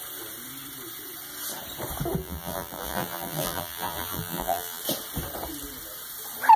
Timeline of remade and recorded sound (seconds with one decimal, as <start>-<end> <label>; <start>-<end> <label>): 0.0-2.2 recorded; 2.2-4.8 remade; 4.8-6.6 recorded